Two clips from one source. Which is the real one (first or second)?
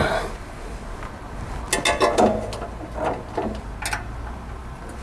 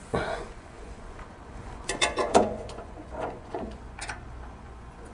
first